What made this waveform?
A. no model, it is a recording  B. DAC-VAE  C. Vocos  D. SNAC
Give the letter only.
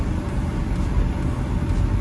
A